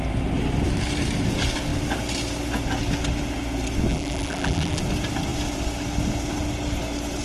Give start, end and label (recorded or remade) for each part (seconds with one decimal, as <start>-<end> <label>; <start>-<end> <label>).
0.0-3.9 recorded; 3.9-4.8 remade; 4.8-7.2 recorded